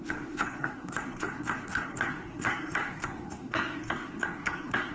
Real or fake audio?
fake